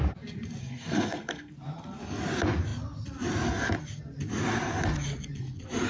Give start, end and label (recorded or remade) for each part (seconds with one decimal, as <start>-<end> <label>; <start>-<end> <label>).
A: 0.0-0.6 recorded; 0.6-1.5 remade; 1.5-5.9 recorded